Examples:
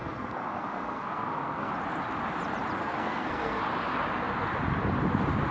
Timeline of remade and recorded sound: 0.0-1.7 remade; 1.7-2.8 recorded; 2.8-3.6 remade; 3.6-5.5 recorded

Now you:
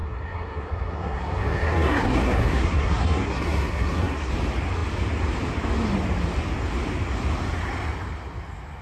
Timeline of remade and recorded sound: 0.0-4.3 remade; 4.3-8.8 recorded

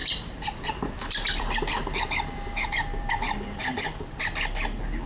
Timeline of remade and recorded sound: 0.0-3.1 remade; 3.1-3.7 recorded; 3.7-4.2 remade; 4.2-5.1 recorded

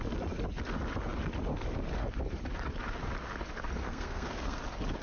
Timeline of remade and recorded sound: 0.0-3.8 recorded; 3.8-4.6 remade; 4.6-5.0 recorded

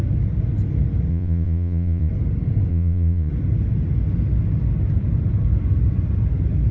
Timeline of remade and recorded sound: 0.0-1.1 recorded; 1.1-2.1 remade; 2.1-2.7 recorded; 2.7-3.3 remade; 3.3-6.7 recorded

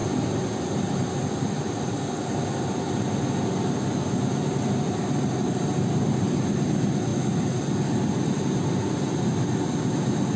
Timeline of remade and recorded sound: 0.0-10.4 recorded

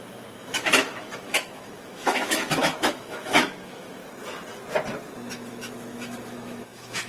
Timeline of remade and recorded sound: 0.0-4.0 remade; 4.0-5.3 recorded; 5.3-7.1 remade

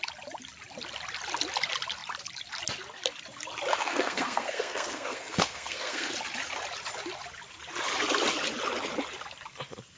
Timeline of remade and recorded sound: 0.0-3.7 recorded; 3.7-6.1 remade; 6.1-10.0 recorded